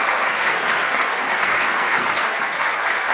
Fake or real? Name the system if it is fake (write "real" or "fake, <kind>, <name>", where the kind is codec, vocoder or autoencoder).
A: fake, codec, SNAC